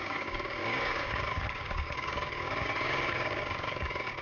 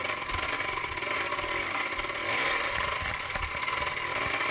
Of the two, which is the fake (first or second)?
first